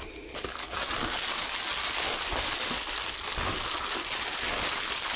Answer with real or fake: real